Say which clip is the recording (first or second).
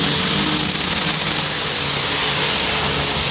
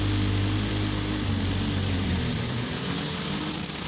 first